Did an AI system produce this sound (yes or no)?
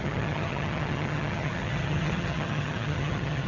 yes